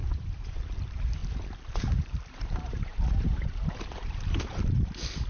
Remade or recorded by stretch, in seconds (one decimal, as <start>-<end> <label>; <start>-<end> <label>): 0.0-0.6 remade; 0.6-1.2 recorded; 1.2-4.4 remade; 4.4-5.3 recorded